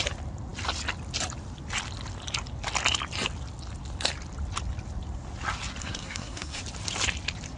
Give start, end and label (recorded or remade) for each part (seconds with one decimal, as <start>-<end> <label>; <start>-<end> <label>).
0.0-5.8 recorded; 5.8-6.6 remade; 6.6-7.6 recorded